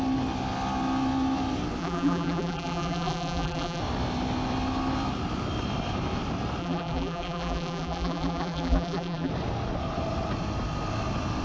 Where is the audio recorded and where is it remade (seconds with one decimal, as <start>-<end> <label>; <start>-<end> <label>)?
0.0-1.8 recorded; 1.8-3.8 remade; 3.8-6.6 recorded; 6.6-9.3 remade; 9.3-11.4 recorded